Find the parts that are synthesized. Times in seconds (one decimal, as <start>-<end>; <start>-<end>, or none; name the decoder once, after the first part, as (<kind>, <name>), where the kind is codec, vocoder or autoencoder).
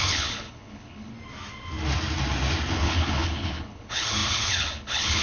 0.0-1.1 (codec, HILCodec); 2.7-5.2